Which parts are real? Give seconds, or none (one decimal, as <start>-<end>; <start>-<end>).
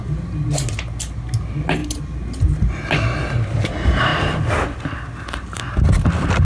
0.0-6.4